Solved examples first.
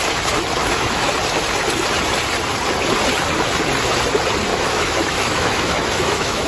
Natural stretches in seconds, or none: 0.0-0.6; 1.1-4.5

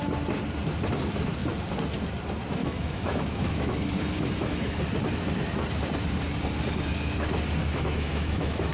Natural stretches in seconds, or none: 0.0-2.6; 4.8-7.6

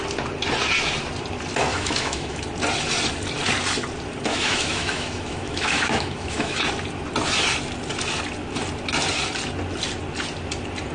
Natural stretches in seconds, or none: 0.0-1.7; 2.4-4.3; 6.6-10.9

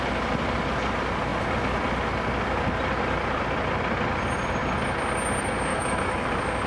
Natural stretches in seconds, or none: 0.0-5.7; 6.3-6.7

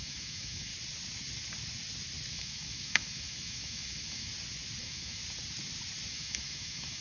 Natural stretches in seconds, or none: 0.7-2.3; 4.3-4.8; 5.2-6.1

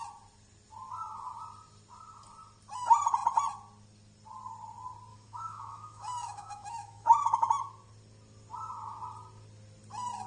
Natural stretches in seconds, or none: 0.0-5.1; 7.5-10.3

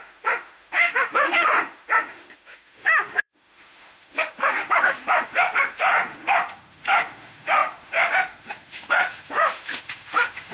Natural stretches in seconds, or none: none

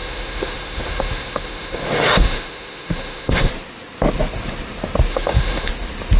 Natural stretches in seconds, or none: 3.5-5.1; 5.7-6.2